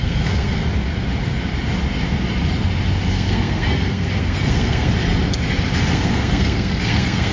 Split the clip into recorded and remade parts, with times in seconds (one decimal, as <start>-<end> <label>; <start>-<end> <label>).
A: 0.0-0.6 remade; 0.6-3.1 recorded; 3.1-4.9 remade; 4.9-5.9 recorded; 5.9-7.3 remade